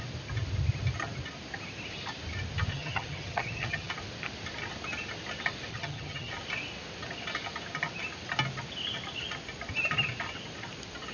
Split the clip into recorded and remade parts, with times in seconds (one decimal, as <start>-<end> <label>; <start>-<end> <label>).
0.0-2.7 recorded; 2.7-3.9 remade; 3.9-5.7 recorded; 5.7-6.3 remade; 6.3-11.1 recorded